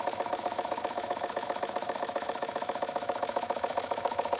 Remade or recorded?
remade